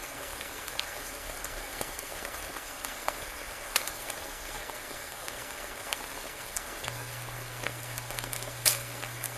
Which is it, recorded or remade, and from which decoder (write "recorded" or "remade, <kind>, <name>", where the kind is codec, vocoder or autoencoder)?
remade, codec, SNAC